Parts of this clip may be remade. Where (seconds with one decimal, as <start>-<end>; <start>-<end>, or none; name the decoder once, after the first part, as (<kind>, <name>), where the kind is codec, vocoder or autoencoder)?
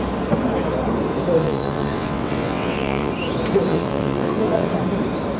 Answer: 1.4-3.1 (vocoder, WaveNeXt); 3.7-4.7